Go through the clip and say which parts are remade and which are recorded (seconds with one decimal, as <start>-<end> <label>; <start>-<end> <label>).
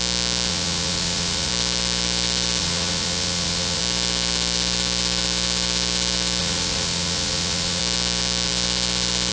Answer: 0.0-0.5 recorded; 0.5-1.5 remade; 1.5-2.6 recorded; 2.6-3.8 remade; 3.8-6.4 recorded; 6.4-7.8 remade; 7.8-9.3 recorded